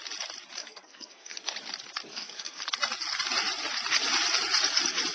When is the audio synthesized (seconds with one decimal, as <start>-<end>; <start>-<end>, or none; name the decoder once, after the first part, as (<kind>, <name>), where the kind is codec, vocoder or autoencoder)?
0.6-1.4 (codec, SNAC); 2.1-2.6